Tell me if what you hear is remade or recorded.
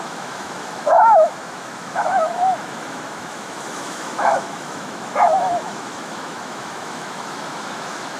remade